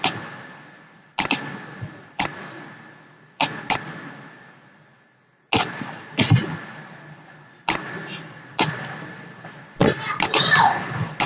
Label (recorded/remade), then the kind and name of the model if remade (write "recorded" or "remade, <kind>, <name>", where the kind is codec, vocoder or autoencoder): recorded